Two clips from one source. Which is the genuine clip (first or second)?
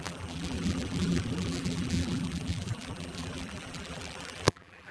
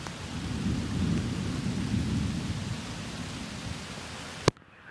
second